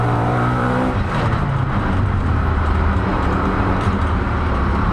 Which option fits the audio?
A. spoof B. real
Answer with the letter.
A